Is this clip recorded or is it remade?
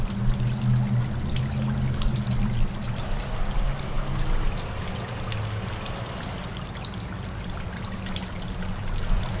recorded